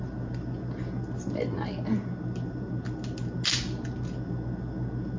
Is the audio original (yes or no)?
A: yes